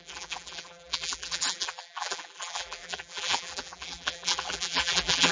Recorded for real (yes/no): no